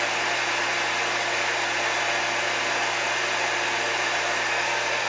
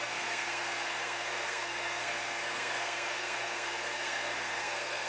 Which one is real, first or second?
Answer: first